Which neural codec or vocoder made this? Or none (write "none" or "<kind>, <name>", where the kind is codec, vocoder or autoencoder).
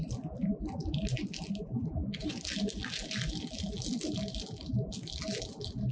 none